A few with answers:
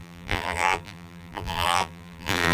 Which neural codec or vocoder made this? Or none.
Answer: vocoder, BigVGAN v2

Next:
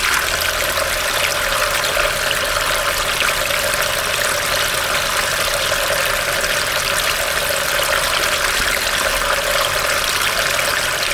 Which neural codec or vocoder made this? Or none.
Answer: none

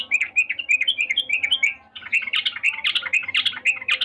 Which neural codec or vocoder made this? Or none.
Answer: none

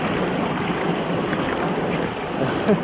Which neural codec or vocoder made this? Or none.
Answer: none